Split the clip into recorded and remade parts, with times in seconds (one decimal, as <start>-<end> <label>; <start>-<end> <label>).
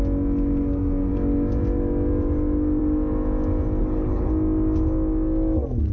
0.0-3.8 recorded; 3.8-4.3 remade; 4.3-5.9 recorded